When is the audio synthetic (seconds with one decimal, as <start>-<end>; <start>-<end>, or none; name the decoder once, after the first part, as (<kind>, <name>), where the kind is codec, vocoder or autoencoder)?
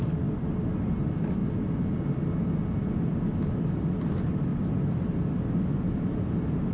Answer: none